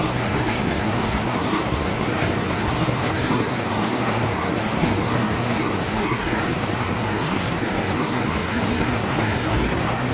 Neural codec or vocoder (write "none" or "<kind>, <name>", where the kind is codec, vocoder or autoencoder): codec, SNAC